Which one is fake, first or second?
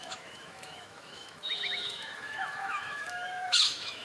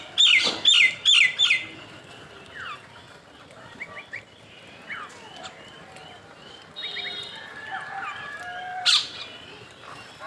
first